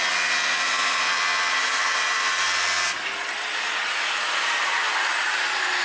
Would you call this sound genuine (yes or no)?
yes